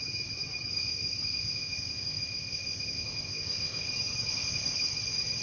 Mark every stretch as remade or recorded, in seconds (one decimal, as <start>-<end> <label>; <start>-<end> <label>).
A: 0.0-0.7 recorded; 0.7-3.9 remade; 3.9-4.3 recorded; 4.3-4.9 remade; 4.9-5.4 recorded